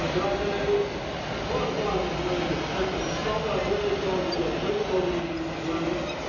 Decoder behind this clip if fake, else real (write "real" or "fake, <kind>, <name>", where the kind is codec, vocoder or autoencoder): real